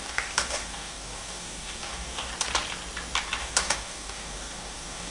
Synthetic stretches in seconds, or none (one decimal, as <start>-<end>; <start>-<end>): 0.0-2.3; 3.4-5.1